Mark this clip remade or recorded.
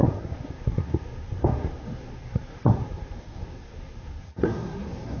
remade